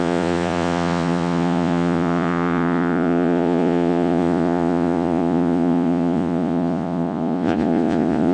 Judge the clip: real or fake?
fake